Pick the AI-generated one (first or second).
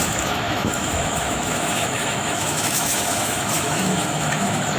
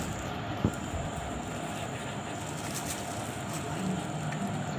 first